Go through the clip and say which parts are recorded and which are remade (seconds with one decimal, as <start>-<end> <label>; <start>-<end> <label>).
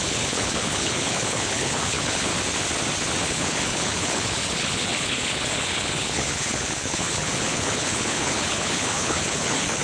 0.0-2.3 remade; 2.3-3.2 recorded; 3.2-9.8 remade